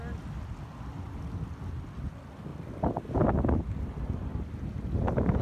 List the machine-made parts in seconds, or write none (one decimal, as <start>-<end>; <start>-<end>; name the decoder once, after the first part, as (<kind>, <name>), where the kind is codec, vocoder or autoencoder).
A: none